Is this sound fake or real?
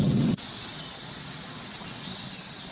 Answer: fake